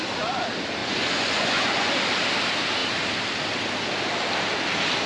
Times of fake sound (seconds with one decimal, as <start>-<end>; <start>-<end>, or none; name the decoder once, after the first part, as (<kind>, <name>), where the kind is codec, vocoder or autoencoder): 0.8-1.9 (vocoder, Vocos)